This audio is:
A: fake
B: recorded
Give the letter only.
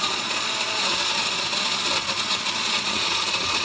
A